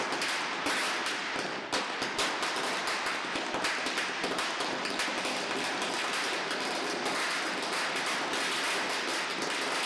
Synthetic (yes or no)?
no